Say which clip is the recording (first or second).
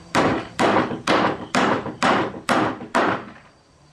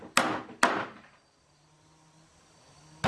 second